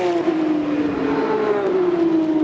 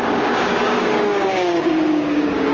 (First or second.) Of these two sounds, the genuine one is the first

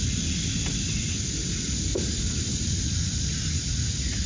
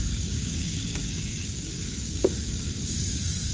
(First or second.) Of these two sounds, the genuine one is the first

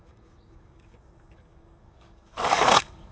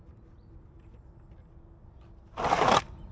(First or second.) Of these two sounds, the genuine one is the second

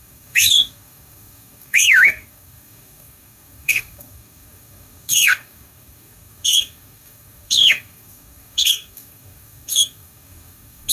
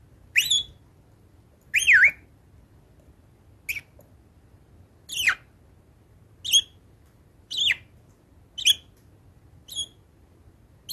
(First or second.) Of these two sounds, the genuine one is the second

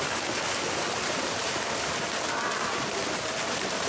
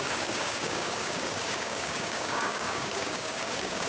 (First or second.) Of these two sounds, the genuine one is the first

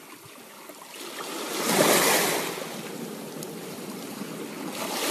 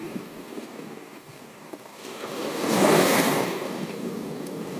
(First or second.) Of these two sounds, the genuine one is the first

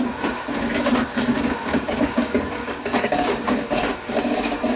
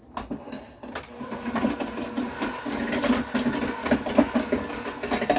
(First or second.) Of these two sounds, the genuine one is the second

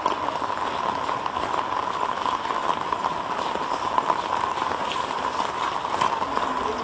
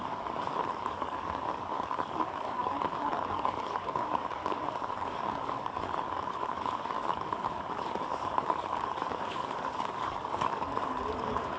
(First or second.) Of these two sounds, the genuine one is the first